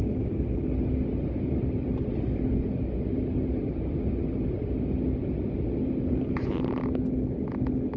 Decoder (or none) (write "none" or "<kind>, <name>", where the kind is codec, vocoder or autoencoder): none